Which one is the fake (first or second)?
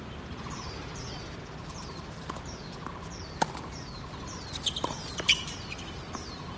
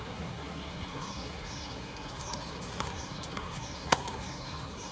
second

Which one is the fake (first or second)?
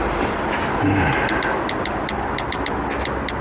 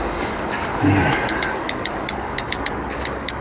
second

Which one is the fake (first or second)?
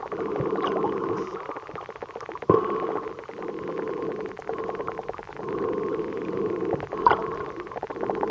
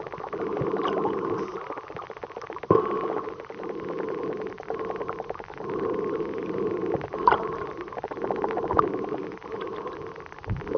second